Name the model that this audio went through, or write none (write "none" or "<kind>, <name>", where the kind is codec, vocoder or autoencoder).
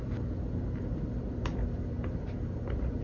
none